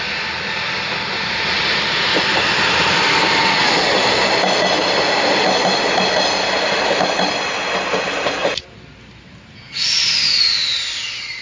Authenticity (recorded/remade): recorded